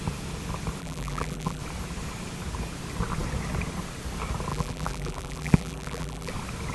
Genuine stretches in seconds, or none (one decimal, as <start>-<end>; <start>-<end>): 0.0-0.8; 1.6-4.5; 6.3-6.7